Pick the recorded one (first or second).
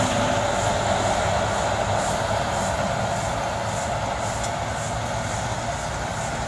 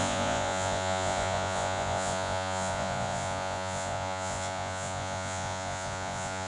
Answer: first